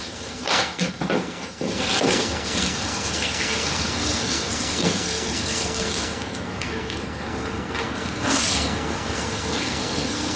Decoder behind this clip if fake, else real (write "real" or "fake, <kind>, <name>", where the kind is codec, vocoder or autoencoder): fake, codec, SNAC